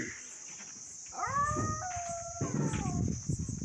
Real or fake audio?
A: real